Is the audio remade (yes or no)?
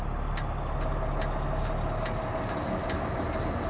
no